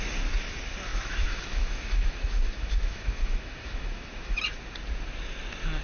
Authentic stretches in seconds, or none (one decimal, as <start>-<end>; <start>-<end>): 0.0-0.9; 4.4-5.8